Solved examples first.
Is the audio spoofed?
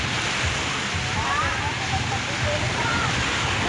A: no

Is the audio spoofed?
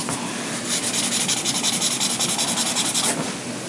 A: no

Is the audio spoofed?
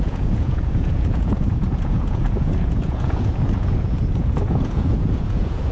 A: yes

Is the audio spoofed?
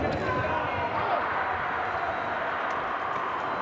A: no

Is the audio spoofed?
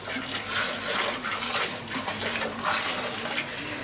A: no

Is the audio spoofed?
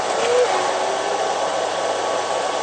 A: no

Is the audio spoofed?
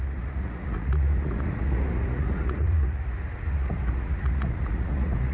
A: yes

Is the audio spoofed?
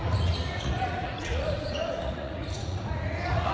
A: yes